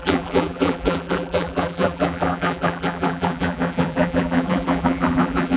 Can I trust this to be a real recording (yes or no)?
no